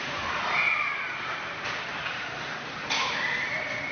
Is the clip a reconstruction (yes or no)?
yes